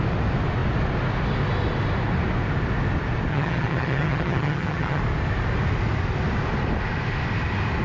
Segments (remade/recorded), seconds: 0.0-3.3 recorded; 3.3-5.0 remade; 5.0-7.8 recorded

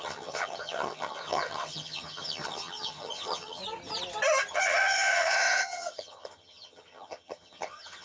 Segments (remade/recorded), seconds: 0.0-3.6 remade; 3.6-4.5 recorded; 4.5-8.0 remade

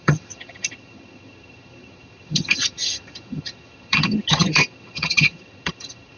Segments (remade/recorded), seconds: 0.0-6.2 remade

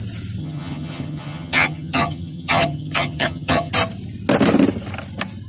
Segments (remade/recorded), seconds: 0.0-0.4 recorded; 0.4-3.7 remade; 3.7-5.5 recorded

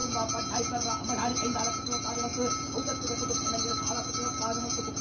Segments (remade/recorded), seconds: 0.0-5.0 recorded

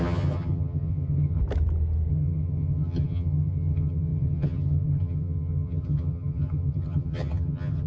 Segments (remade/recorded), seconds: 0.0-1.4 remade; 1.4-2.1 recorded; 2.1-7.9 remade

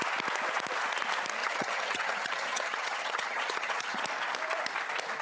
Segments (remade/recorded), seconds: 0.0-1.4 recorded; 1.4-4.0 remade; 4.0-5.2 recorded

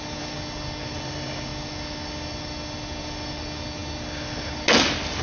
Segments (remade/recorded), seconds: 0.0-5.2 recorded